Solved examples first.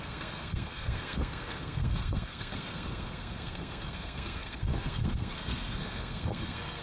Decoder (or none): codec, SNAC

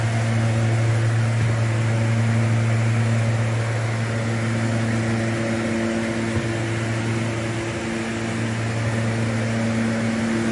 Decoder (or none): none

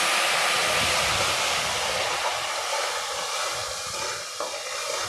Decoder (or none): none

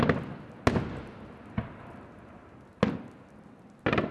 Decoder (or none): none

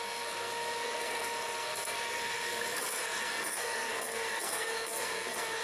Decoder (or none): codec, SNAC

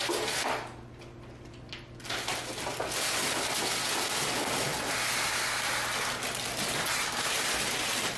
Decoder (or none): none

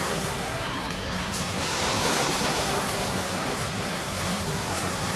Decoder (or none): codec, SNAC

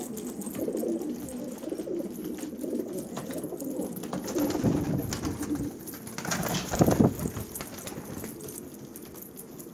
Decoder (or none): none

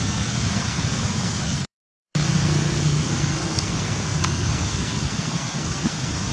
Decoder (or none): codec, SNAC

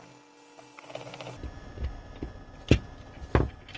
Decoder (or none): none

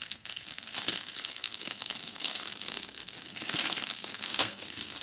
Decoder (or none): codec, SNAC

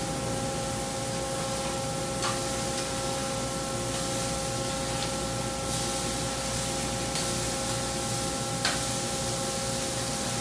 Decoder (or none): none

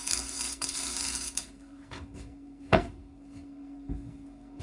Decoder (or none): codec, SNAC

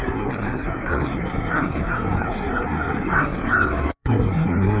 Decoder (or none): codec, SNAC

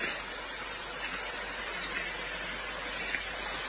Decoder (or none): none